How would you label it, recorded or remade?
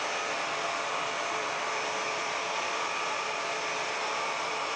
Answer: remade